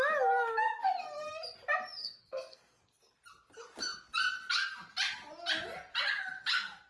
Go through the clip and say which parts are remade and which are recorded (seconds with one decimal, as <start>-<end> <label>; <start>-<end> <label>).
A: 0.0-2.0 recorded; 2.0-2.8 remade; 2.8-6.9 recorded